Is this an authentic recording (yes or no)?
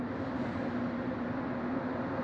yes